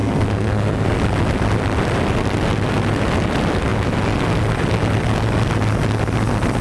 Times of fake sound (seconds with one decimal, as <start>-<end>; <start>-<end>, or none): 0.0-0.9